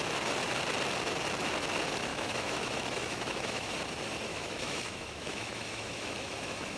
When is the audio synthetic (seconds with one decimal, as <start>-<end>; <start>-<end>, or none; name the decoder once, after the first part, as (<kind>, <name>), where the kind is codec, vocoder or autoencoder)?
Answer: 2.1-3.7 (autoencoder, DAC-VAE); 4.3-6.8